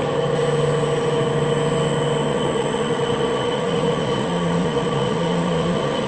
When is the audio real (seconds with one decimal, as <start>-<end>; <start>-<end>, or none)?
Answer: 0.0-2.3